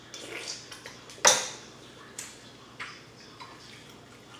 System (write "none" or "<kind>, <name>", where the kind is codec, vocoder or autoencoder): none